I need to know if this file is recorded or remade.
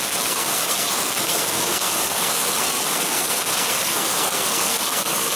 remade